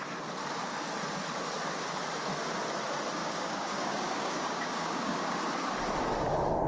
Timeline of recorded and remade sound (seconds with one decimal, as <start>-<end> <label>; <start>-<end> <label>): 0.0-3.2 recorded; 3.2-5.4 remade; 5.4-6.7 recorded